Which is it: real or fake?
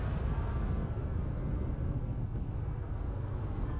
fake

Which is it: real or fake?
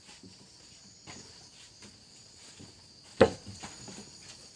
real